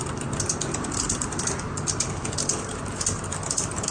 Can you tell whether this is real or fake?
real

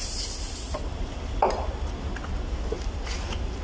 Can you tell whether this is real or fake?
real